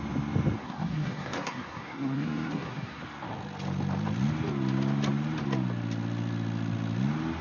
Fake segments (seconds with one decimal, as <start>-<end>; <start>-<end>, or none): 0.6-3.0